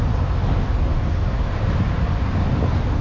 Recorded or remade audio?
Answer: recorded